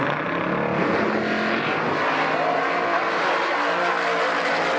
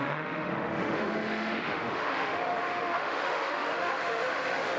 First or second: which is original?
first